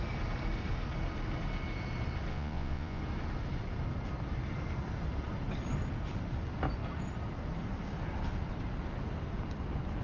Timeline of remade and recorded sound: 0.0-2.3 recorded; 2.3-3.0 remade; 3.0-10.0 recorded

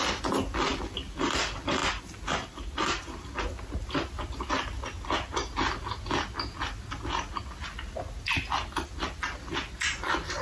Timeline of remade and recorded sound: 0.0-10.4 recorded

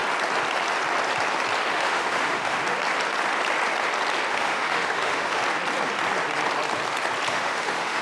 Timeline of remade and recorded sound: 0.0-1.7 recorded; 1.7-2.6 remade; 2.6-4.3 recorded; 4.3-5.4 remade; 5.4-7.3 recorded; 7.3-8.0 remade

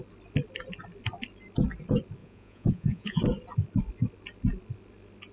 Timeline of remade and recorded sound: 0.0-2.2 recorded; 2.2-3.2 remade; 3.2-5.3 recorded

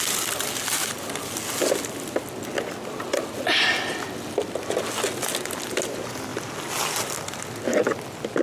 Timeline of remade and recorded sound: 0.0-8.4 recorded

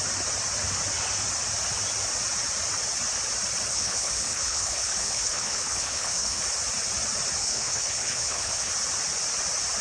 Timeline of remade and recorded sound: 0.0-3.7 recorded; 3.7-6.4 remade; 6.4-7.4 recorded; 7.4-8.7 remade; 8.7-9.8 recorded